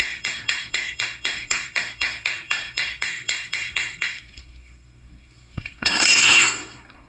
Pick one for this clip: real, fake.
fake